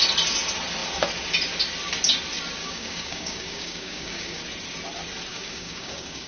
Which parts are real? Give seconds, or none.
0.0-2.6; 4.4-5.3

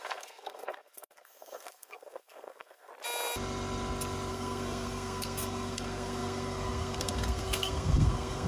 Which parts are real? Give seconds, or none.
2.9-4.3

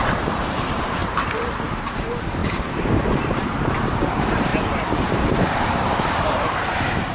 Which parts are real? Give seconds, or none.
none

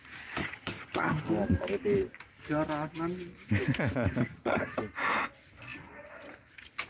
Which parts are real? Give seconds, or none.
0.0-0.4; 1.3-4.2; 4.8-6.9

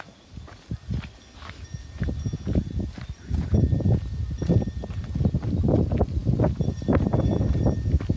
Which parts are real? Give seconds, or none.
0.0-8.2